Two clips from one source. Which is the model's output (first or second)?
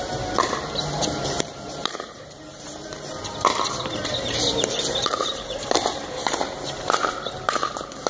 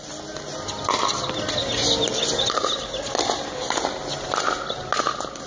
first